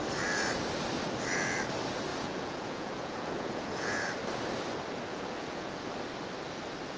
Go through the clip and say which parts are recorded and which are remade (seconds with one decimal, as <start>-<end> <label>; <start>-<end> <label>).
0.0-2.1 recorded; 2.1-3.9 remade; 3.9-5.1 recorded; 5.1-5.8 remade; 5.8-7.0 recorded